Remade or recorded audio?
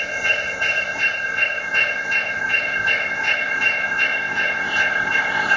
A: remade